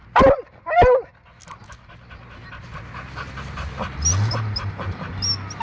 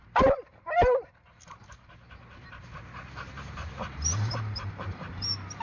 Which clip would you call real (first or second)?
first